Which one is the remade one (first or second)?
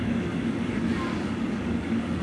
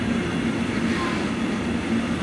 first